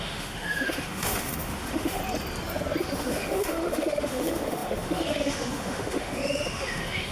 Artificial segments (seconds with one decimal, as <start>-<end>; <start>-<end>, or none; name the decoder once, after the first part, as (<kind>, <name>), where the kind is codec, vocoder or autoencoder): 0.0-2.0 (autoencoder, DAC-VAE); 2.8-7.1

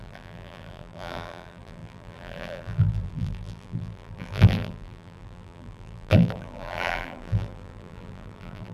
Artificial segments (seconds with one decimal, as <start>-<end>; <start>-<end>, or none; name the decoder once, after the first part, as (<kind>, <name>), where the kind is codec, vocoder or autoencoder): 0.0-8.7 (vocoder, BigVGAN v2)

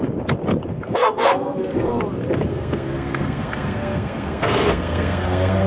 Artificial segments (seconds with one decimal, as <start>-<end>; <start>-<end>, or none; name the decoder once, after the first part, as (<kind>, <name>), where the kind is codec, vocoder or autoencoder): 0.7-2.0 (codec, SNAC); 2.5-5.7

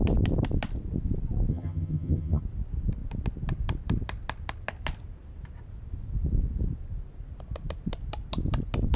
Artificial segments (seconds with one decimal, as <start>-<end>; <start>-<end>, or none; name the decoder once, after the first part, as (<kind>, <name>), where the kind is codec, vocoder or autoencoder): 1.5-2.4 (vocoder, HiFi-GAN)

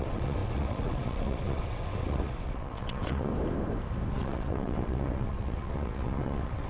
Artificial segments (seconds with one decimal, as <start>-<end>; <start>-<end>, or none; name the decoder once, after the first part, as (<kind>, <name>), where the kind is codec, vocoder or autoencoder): 0.0-3.3 (vocoder, WaveNeXt); 4.1-6.7